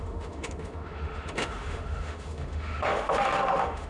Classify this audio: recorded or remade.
remade